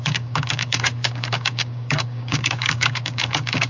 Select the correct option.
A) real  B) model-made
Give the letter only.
B